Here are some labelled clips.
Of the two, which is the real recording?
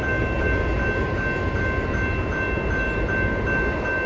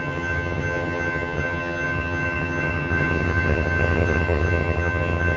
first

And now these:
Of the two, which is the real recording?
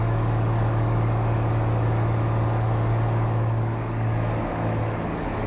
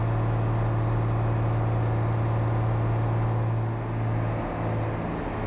second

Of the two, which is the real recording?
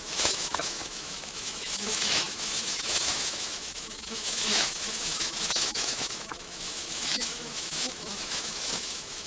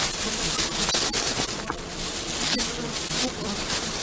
second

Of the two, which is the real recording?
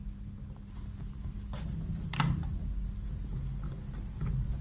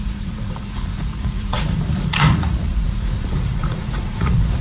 first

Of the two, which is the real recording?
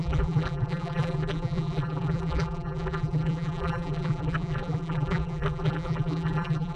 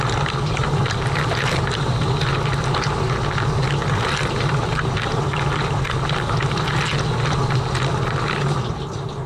second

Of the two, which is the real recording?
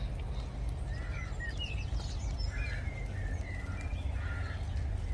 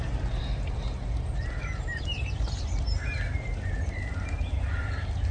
first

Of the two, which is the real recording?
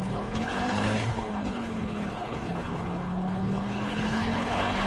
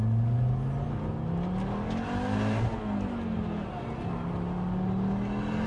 second